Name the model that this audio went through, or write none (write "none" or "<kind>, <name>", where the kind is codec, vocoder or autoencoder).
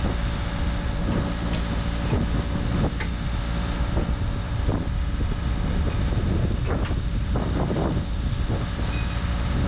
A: none